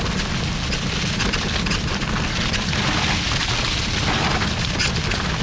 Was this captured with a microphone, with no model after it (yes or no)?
yes